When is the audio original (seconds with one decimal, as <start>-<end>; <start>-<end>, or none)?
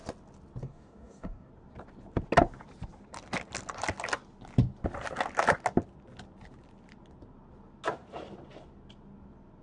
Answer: 0.0-0.6; 1.5-9.6